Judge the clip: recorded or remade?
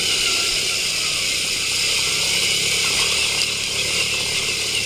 recorded